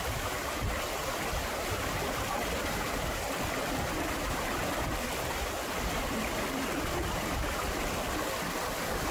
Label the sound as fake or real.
fake